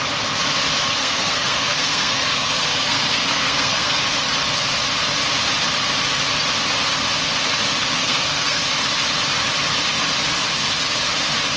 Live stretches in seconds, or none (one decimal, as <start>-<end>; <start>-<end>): 0.0-1.0; 4.0-8.0; 8.6-11.6